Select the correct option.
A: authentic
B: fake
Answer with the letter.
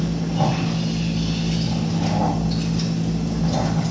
A